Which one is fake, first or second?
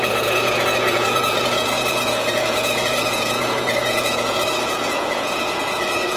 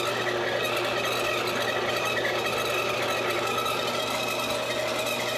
first